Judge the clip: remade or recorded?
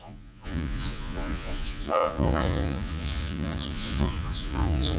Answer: remade